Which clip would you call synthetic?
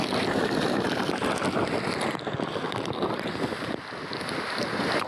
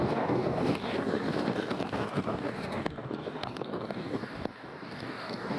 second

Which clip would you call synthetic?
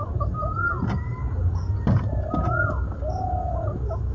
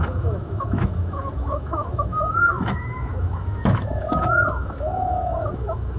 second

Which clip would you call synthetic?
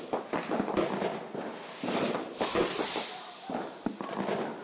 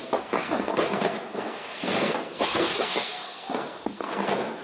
second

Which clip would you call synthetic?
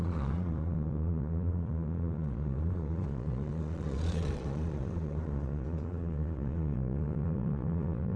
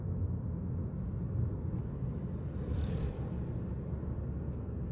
first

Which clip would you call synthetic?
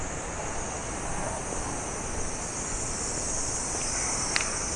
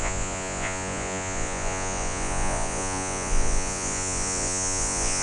second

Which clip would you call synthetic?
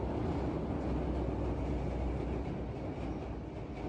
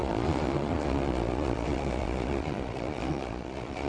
second